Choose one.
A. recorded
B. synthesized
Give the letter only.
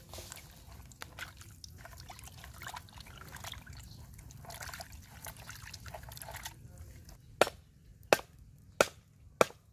A